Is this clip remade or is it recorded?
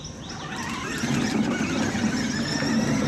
recorded